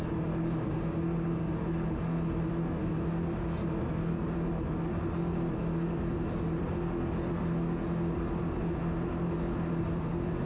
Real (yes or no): yes